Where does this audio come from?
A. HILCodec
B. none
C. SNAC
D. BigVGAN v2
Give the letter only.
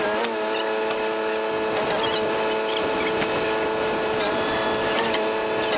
B